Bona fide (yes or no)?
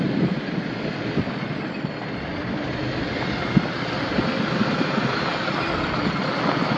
yes